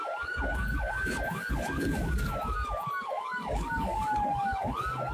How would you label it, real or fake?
fake